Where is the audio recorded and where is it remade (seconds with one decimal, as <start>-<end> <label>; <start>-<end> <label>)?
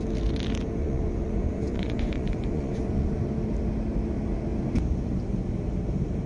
0.0-0.8 recorded; 0.8-3.2 remade; 3.2-6.3 recorded